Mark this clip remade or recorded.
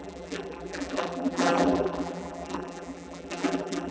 remade